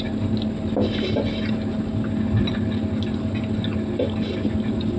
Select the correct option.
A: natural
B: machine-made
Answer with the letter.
A